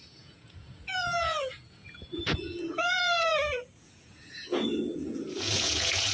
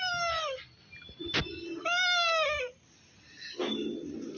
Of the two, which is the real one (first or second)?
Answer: second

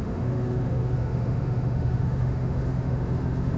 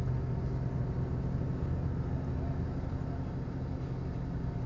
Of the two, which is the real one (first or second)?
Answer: second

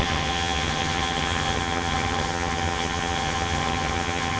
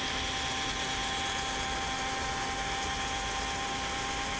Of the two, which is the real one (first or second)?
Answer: second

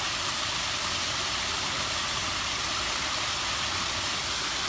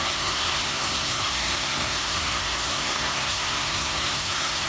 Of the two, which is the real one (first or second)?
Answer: first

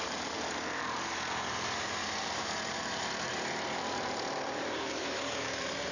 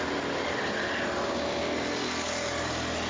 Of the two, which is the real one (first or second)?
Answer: second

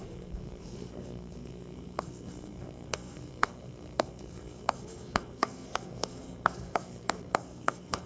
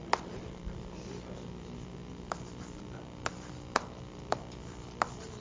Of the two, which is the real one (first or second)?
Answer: second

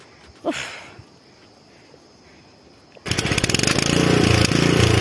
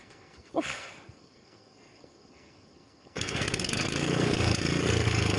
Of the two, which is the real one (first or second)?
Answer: first